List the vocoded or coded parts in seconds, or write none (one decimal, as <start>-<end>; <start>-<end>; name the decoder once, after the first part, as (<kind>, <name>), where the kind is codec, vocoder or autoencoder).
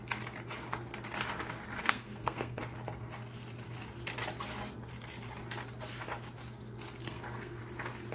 1.8-2.6 (codec, SNAC); 7.0-7.6